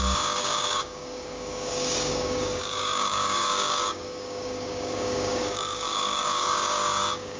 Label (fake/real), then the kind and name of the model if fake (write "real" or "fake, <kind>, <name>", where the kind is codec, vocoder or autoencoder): fake, codec, DAC